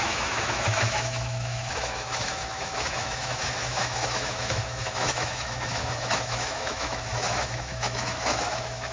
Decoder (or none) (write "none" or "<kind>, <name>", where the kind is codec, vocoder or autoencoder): autoencoder, DAC-VAE